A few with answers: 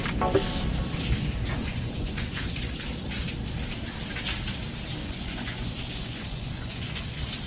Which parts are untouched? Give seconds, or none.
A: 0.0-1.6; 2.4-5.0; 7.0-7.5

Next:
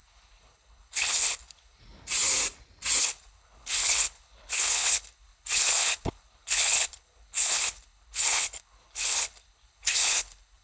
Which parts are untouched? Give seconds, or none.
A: 1.8-3.0

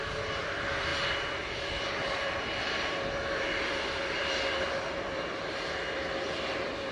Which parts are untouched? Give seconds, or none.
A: 0.0-6.9